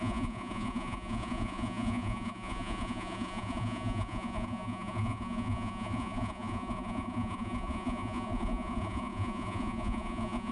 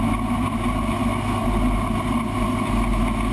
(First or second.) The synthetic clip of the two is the first